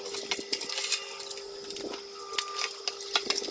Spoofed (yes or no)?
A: no